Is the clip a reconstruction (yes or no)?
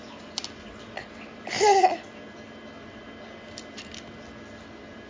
no